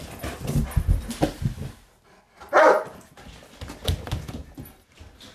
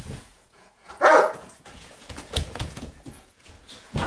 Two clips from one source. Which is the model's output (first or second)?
second